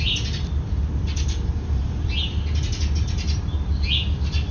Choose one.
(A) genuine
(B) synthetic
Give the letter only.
A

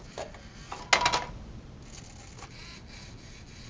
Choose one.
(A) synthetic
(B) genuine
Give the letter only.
B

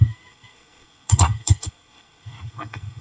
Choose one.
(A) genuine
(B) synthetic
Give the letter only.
B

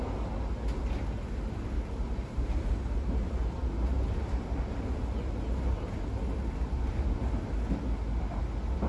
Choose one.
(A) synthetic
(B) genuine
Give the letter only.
B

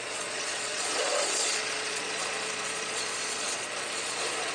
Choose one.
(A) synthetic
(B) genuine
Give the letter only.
A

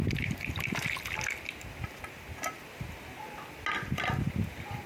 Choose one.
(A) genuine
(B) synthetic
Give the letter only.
A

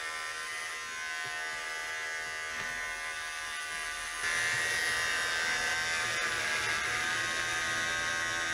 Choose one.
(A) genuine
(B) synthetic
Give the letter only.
A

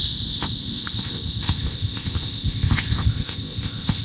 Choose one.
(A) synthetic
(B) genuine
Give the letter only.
A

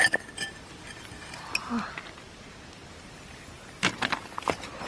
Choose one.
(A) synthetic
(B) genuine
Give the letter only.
B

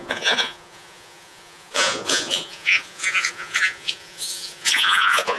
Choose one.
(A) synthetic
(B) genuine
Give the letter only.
A